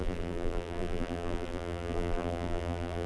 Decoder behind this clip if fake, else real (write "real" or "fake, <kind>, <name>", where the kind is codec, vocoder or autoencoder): fake, vocoder, BigVGAN v2